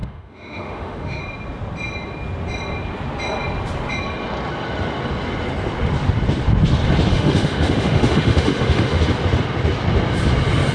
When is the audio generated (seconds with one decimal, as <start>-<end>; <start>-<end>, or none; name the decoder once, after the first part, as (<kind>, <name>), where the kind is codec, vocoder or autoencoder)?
0.0-1.2 (autoencoder, DAC-VAE); 7.1-9.0